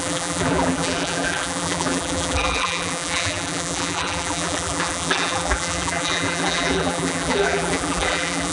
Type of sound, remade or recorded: remade